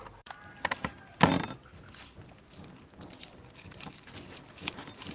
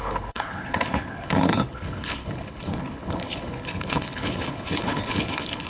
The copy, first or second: second